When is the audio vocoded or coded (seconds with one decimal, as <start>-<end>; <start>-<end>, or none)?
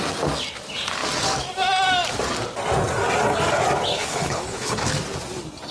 3.9-4.8